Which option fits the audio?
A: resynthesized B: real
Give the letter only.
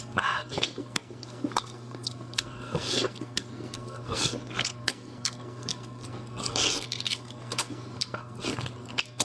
A